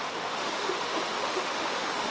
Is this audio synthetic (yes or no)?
yes